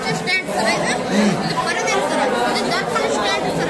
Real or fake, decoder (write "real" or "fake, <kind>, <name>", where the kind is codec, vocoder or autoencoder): real